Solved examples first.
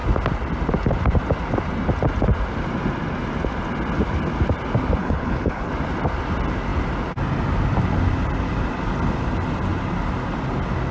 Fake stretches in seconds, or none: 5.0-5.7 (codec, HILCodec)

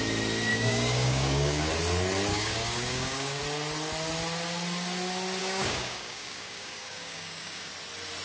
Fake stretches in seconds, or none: 0.5-1.7 (codec, DAC); 2.3-3.4; 5.4-7.7

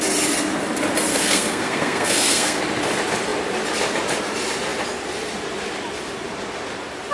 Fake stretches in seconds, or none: 1.1-2.6 (codec, SNAC)

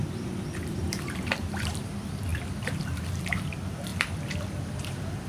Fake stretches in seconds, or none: 0.7-3.9 (vocoder, BigVGAN v2); 4.8-5.3

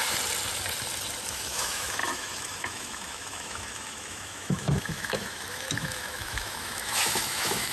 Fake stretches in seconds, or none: 1.3-7.7 (autoencoder, DAC-VAE)

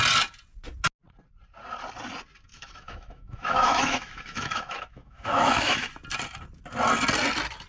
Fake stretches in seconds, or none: 2.5-5.9 (autoencoder, DAC-VAE)

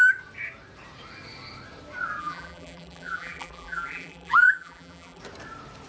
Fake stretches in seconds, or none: 2.2-5.2 (vocoder, BigVGAN v2)